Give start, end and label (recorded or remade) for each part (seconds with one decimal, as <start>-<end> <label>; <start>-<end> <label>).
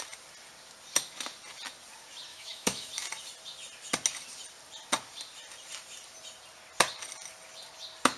0.0-2.3 recorded; 2.3-2.9 remade; 2.9-8.2 recorded